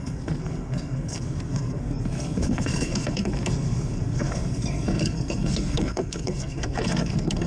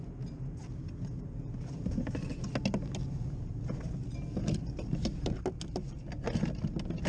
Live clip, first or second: second